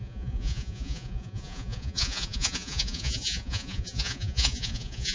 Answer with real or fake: fake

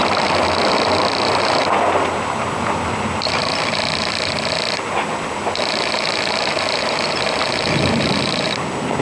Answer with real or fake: real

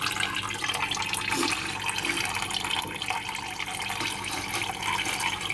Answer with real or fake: real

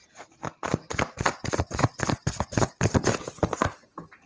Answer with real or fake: real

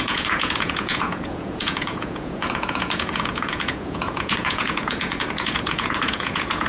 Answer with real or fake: fake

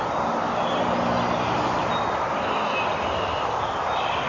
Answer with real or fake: real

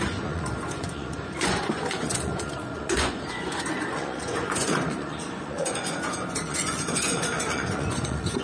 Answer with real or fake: fake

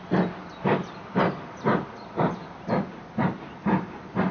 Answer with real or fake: real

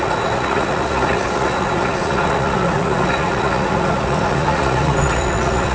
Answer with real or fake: fake